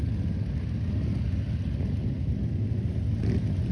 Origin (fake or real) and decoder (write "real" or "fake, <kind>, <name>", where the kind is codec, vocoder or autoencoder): real